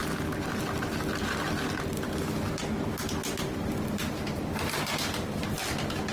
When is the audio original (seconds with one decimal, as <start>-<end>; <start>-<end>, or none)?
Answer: 0.0-6.1